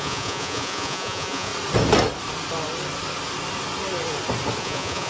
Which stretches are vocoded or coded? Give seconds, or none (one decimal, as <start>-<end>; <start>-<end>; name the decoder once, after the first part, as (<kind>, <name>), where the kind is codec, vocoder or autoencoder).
0.0-1.5 (vocoder, Vocos); 4.6-5.1